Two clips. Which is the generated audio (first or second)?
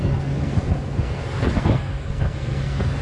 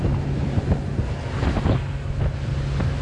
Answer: first